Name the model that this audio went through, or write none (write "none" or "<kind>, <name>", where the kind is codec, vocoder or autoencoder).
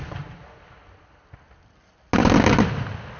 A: none